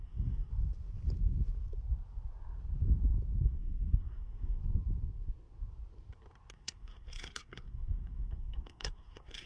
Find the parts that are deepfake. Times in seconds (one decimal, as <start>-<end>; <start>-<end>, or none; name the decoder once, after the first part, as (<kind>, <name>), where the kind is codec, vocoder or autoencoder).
0.0-0.5 (codec, SNAC); 3.4-4.6; 6.5-9.5